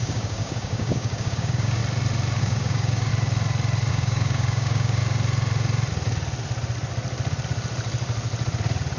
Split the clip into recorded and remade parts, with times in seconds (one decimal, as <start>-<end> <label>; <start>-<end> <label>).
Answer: 0.0-1.8 remade; 1.8-2.4 recorded; 2.4-3.1 remade; 3.1-3.9 recorded; 3.9-5.0 remade; 5.0-9.0 recorded